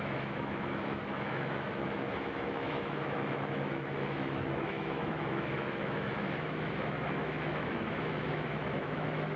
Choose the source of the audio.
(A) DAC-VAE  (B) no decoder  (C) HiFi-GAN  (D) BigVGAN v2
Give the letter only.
A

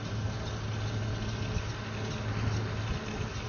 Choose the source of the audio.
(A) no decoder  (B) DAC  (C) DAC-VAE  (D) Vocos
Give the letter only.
A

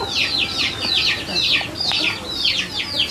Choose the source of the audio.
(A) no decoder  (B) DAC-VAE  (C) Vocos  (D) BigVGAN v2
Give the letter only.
A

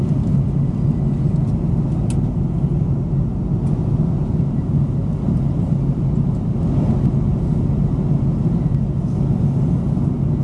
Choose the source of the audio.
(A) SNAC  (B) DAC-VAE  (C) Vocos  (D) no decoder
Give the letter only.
D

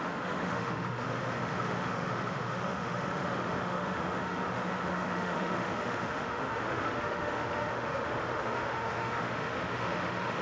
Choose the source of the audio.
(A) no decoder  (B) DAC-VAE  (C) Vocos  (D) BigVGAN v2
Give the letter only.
B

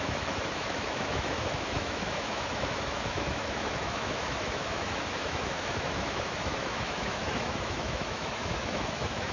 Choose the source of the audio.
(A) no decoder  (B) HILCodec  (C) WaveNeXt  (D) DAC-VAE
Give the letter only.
D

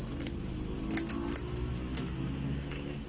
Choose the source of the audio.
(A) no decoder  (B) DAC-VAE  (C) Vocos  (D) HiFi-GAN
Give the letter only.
A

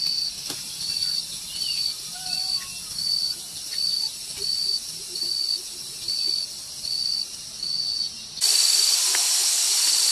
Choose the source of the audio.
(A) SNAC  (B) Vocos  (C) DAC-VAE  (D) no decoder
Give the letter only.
D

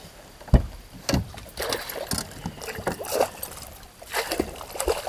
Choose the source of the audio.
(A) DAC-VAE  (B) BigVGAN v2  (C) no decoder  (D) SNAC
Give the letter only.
C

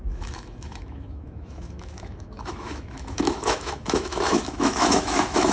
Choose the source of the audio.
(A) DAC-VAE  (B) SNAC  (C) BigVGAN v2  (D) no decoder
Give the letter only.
A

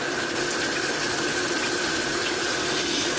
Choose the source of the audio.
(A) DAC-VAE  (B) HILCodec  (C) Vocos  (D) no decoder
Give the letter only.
D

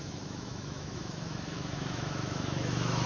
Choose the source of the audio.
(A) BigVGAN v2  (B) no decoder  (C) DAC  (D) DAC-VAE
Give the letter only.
D